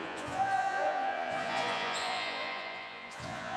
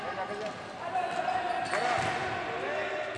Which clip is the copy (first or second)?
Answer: first